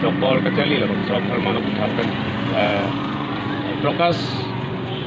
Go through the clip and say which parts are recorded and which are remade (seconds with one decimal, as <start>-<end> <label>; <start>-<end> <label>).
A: 0.0-5.1 remade